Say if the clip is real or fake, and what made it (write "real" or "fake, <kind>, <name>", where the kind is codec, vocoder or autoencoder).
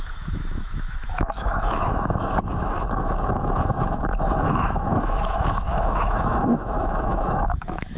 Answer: fake, autoencoder, DAC-VAE